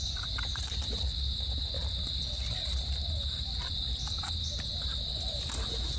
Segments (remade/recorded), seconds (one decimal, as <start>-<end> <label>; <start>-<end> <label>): 0.0-1.4 remade; 1.4-1.8 recorded; 1.8-4.5 remade; 4.5-6.0 recorded